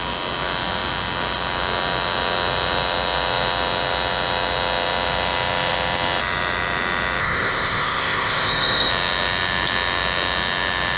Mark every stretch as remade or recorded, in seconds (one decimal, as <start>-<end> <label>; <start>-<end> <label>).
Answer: 0.0-7.2 recorded; 7.2-8.9 remade; 8.9-11.0 recorded